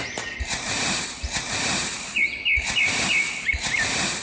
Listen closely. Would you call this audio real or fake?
real